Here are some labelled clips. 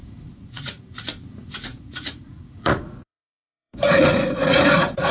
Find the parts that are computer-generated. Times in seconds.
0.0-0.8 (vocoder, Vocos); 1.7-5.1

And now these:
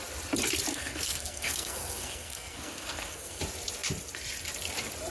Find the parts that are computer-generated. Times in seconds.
0.7-3.4 (codec, SNAC)

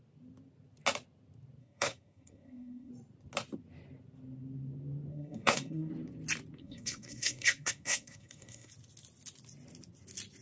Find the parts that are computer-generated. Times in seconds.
1.6-2.9 (codec, SNAC); 5.1-5.9; 6.6-8.7

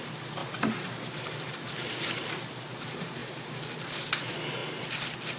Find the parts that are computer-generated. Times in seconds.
0.0-3.2 (vocoder, BigVGAN v2); 4.1-4.6

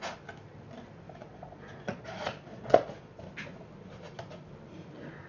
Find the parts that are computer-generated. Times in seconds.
1.2-3.2 (vocoder, Vocos)